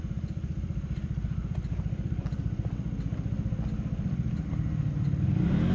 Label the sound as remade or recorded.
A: recorded